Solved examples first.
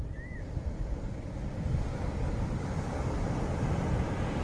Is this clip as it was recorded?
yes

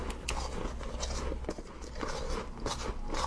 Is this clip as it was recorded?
yes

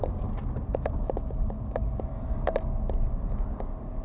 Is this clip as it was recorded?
yes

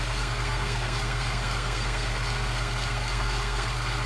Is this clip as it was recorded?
no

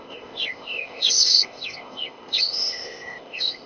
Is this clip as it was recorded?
no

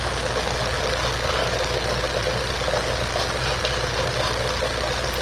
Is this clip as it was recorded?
yes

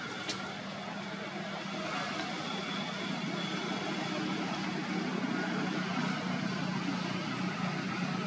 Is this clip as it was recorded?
yes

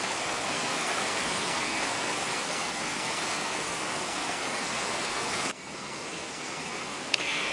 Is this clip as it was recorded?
no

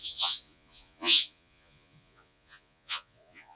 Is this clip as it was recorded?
no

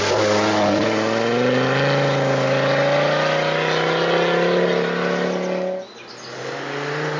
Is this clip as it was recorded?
yes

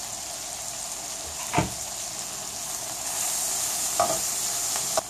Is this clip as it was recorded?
yes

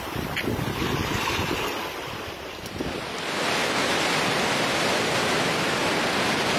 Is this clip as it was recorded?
yes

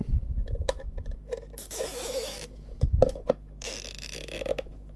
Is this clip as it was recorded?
no